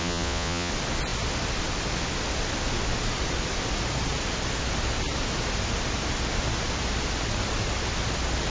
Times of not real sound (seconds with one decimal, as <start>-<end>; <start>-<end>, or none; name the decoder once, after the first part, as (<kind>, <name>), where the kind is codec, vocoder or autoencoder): 0.0-0.7 (vocoder, Vocos)